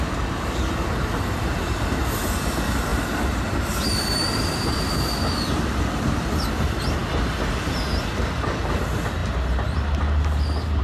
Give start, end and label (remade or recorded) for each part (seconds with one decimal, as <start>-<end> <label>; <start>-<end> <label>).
0.0-2.9 recorded; 2.9-5.8 remade; 5.8-10.8 recorded